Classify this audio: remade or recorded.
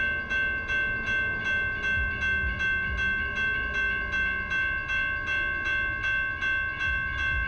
recorded